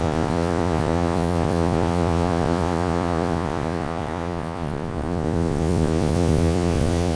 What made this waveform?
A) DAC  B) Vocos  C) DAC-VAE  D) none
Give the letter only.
B